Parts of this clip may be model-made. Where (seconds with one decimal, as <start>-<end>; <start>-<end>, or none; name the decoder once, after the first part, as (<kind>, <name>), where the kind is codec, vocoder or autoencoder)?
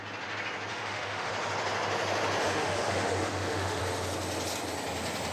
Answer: 0.7-1.3 (autoencoder, DAC-VAE); 2.4-3.8